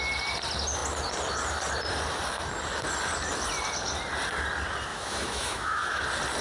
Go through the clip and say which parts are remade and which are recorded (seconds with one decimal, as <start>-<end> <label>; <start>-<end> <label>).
0.0-4.9 recorded; 4.9-6.0 remade; 6.0-6.4 recorded